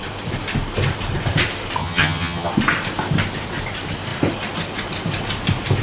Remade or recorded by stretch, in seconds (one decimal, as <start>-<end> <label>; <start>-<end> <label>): 0.0-1.8 recorded; 1.8-2.5 remade; 2.5-5.8 recorded